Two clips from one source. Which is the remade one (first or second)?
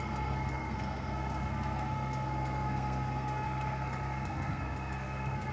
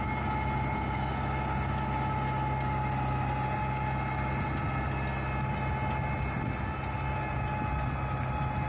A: first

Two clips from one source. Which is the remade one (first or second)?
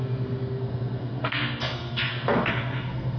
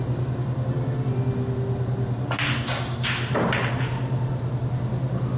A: first